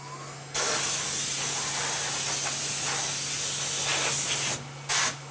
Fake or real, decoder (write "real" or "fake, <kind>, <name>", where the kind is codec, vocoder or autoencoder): real